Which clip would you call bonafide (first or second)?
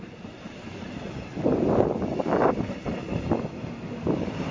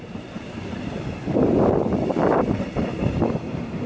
first